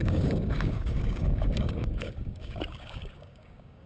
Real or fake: fake